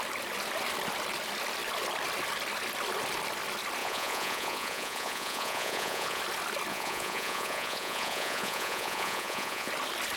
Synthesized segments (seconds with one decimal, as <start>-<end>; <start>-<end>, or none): 3.8-6.2; 6.7-9.7